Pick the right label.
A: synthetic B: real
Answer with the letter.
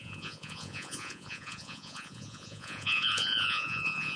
A